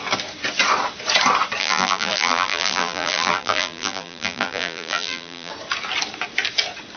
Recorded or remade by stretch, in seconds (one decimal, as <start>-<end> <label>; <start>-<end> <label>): 0.0-1.6 recorded; 1.6-5.5 remade; 5.5-7.0 recorded